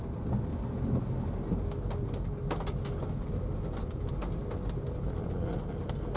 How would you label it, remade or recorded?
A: recorded